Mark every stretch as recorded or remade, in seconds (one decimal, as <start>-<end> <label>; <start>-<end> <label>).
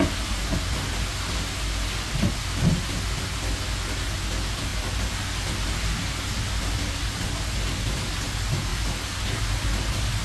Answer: 0.0-10.2 recorded